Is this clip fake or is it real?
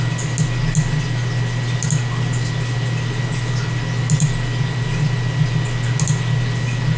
real